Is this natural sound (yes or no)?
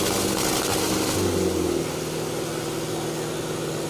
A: yes